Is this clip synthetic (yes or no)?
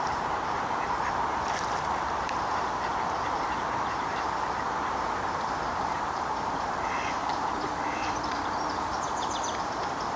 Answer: yes